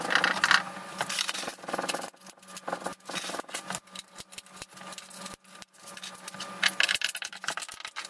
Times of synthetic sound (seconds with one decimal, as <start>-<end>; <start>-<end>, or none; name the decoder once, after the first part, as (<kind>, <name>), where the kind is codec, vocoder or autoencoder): none